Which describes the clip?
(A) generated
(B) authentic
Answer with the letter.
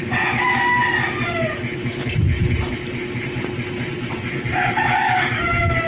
B